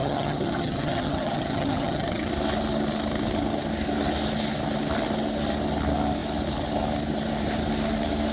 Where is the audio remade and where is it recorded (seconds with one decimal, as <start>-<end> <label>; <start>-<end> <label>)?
0.0-2.3 remade; 2.3-8.3 recorded